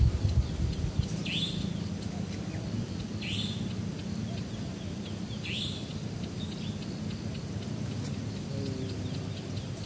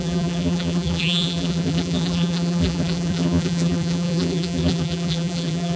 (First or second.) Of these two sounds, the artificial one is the second